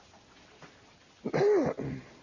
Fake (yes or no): no